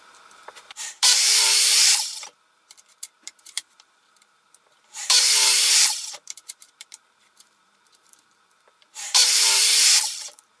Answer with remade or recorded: remade